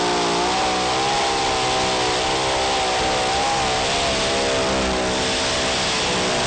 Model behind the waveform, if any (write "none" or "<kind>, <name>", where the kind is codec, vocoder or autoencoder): none